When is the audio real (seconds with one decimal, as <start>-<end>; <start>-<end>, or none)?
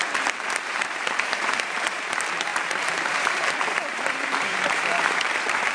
none